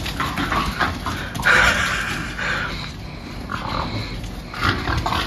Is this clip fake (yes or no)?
no